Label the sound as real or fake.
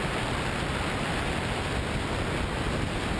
real